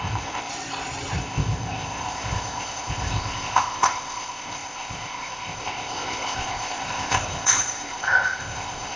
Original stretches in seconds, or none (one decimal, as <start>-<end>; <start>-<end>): 0.5-1.2